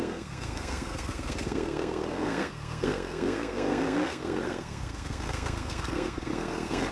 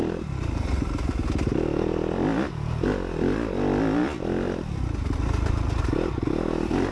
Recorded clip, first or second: second